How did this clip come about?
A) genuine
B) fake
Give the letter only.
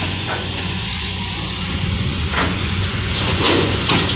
B